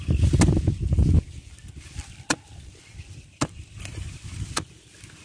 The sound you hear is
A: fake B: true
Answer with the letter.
B